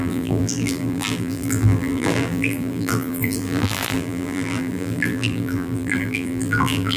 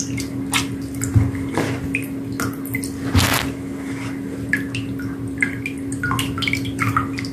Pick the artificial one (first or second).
first